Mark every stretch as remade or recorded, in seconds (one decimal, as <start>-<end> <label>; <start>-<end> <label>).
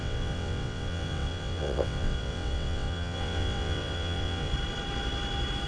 0.0-4.5 remade; 4.5-5.7 recorded